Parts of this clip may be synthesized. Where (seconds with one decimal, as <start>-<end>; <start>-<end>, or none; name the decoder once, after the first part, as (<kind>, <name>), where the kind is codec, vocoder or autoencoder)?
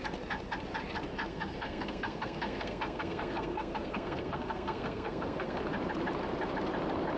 1.3-5.6 (codec, SNAC)